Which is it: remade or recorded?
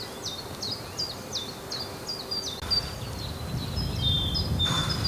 recorded